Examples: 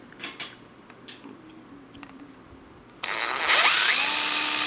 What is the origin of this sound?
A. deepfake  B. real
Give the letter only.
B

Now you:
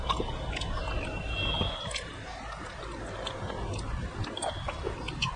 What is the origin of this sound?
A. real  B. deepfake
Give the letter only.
A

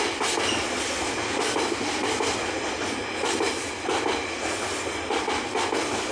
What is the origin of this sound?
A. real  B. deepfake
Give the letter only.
A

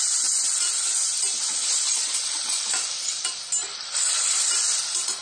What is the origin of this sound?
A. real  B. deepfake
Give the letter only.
A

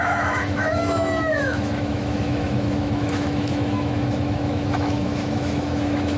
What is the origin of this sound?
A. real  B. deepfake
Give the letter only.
B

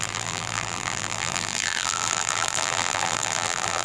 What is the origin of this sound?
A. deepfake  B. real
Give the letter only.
A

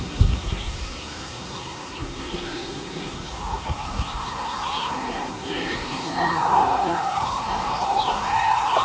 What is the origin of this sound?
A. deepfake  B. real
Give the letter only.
A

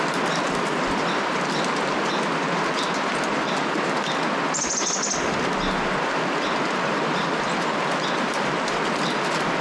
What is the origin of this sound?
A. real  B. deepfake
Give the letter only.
A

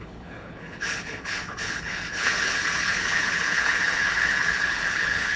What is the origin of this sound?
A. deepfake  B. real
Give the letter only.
A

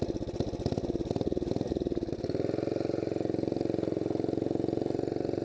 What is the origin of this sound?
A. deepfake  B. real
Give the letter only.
B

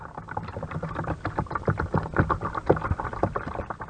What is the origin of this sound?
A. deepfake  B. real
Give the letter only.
B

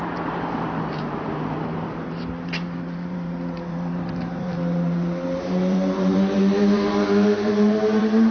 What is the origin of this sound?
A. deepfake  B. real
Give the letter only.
A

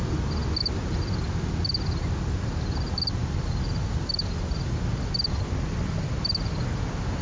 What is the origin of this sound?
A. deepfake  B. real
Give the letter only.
B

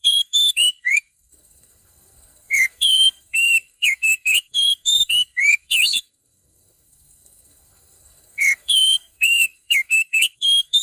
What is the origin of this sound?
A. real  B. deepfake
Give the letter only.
B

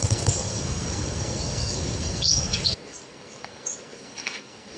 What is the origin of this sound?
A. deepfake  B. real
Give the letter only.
A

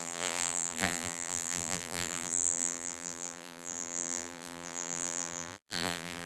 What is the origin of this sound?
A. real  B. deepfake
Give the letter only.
B